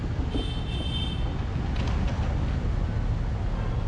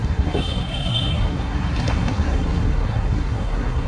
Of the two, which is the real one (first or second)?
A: first